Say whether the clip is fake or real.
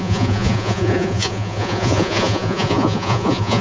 fake